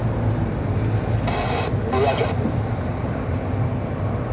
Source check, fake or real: real